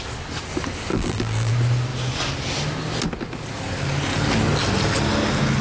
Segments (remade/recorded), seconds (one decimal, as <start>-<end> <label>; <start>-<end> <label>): 0.0-0.9 recorded; 0.9-1.5 remade; 1.5-5.6 recorded